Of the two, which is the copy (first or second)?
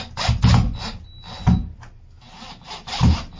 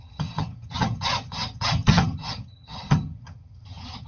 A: second